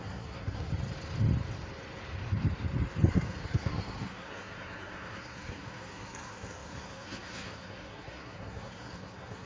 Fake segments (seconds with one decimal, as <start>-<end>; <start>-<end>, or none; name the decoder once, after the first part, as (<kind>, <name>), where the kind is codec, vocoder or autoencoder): 0.0-0.7 (codec, SNAC); 3.1-9.5